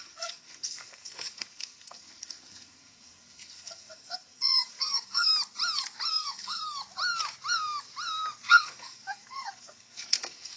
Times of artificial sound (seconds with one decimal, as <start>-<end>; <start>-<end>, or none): 0.0-5.3; 6.1-6.8; 8.5-10.6